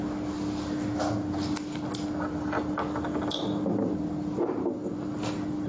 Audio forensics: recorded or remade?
recorded